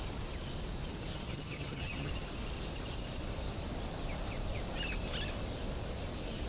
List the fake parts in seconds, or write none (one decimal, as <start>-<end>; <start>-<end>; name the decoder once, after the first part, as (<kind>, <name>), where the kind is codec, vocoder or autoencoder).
1.1-2.1 (vocoder, HiFi-GAN)